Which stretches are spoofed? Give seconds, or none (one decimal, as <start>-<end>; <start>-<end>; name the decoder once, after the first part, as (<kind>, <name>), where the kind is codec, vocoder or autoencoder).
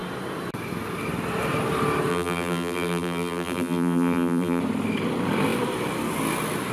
2.1-4.6 (vocoder, BigVGAN v2)